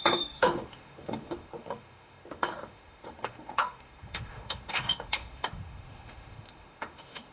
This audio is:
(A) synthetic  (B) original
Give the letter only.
A